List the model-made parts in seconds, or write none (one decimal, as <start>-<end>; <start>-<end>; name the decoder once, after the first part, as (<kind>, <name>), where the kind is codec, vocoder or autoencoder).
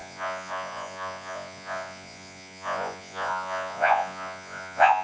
0.0-5.0 (vocoder, Vocos)